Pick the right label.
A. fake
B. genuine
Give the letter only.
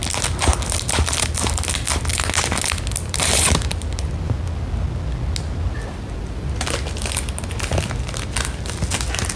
B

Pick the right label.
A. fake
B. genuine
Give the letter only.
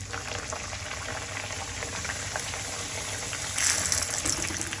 B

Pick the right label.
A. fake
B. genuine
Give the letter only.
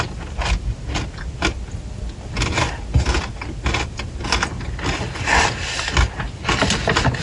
B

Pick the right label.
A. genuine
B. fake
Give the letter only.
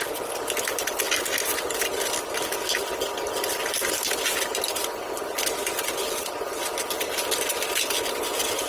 A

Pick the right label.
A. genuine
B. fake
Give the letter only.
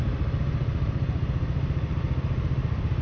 A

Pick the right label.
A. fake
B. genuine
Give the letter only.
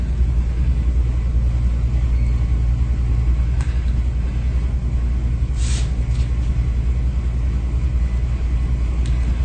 B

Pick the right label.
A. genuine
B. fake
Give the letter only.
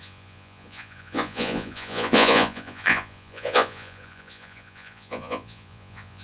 B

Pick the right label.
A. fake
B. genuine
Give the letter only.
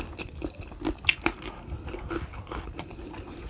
B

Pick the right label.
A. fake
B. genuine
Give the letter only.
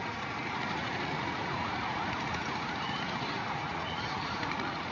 A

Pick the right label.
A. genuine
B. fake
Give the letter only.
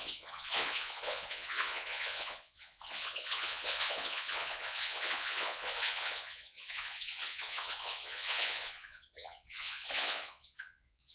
B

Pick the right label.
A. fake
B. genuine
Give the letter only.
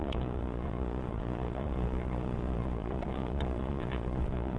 A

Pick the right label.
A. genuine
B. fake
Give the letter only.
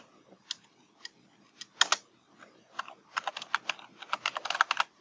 A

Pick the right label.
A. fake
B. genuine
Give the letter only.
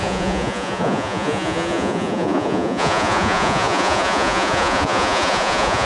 A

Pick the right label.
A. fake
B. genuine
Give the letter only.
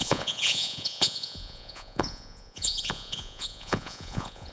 A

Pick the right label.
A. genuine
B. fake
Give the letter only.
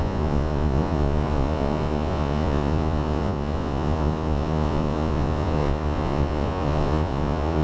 B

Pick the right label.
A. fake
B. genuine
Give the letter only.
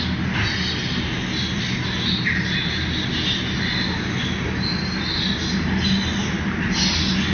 B